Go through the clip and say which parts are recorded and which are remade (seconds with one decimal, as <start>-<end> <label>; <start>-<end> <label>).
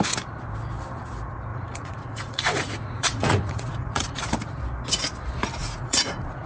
0.0-1.5 recorded; 1.5-4.2 remade; 4.2-5.6 recorded; 5.6-6.5 remade